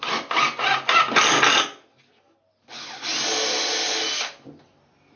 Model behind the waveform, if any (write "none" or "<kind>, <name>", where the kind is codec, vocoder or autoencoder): none